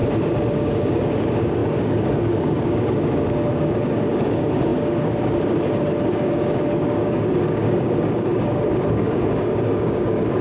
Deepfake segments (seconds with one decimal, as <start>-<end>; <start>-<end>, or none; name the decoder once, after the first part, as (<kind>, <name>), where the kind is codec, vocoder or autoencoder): 0.5-10.4 (codec, DAC)

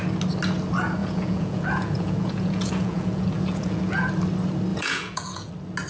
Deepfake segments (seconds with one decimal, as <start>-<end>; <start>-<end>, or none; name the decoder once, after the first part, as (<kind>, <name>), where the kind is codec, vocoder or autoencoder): 1.0-4.1 (vocoder, Vocos); 4.7-5.5

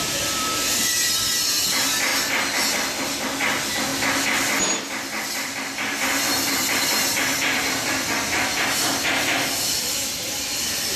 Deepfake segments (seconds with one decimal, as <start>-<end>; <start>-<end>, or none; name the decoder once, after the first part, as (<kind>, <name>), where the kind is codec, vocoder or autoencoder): 0.0-2.1 (vocoder, BigVGAN v2); 2.7-3.9; 4.6-11.0